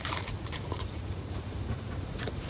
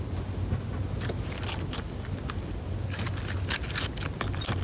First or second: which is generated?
first